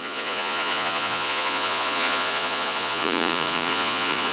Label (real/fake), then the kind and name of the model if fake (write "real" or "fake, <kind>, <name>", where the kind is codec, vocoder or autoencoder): fake, vocoder, Vocos